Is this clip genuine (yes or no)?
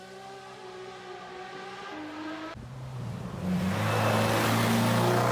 yes